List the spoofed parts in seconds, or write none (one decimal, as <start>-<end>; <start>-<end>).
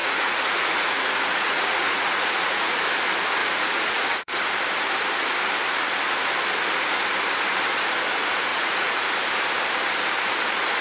0.0-2.8; 3.4-4.4; 8.5-9.1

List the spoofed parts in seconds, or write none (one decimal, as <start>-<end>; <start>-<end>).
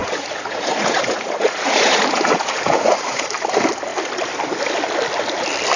0.0-3.2